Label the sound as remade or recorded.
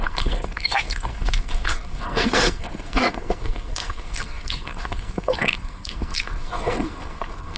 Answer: remade